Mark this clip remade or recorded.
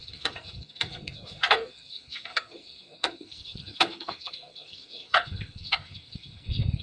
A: remade